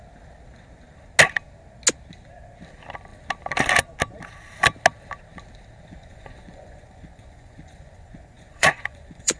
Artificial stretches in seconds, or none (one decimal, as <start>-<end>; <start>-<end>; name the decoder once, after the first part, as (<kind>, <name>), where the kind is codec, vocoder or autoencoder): 6.0-9.4 (vocoder, Vocos)